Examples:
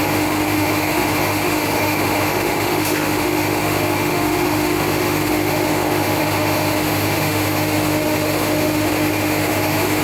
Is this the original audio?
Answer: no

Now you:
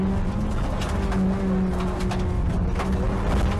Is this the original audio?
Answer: yes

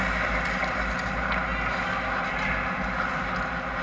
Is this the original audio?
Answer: yes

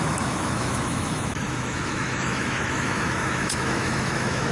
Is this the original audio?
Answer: no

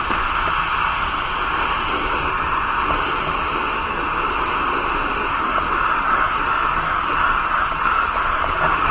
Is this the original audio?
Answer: yes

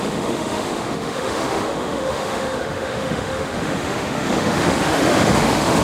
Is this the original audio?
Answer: no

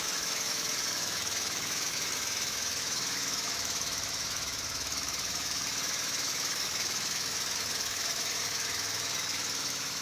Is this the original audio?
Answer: no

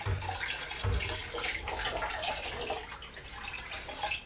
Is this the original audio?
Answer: yes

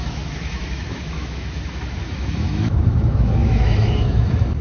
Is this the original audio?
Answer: no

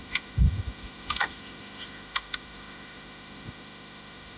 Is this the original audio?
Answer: no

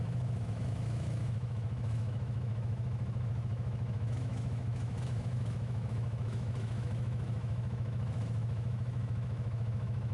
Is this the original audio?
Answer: no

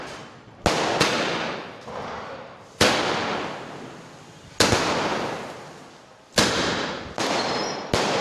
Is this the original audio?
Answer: yes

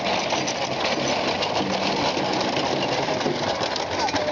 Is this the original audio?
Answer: yes